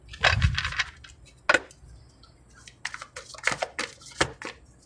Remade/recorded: recorded